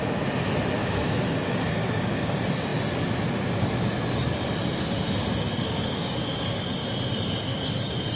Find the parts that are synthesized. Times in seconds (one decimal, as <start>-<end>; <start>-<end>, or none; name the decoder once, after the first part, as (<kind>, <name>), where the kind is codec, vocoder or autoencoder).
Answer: 0.8-2.3 (codec, DAC); 5.6-6.6